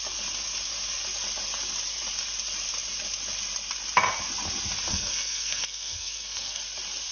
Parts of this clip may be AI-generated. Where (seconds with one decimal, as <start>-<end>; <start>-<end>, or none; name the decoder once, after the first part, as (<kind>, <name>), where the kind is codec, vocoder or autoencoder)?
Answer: 4.9-6.6 (codec, SNAC)